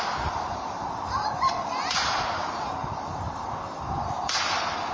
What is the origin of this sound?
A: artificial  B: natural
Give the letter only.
A